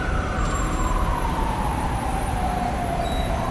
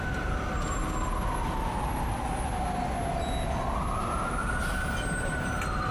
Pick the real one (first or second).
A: second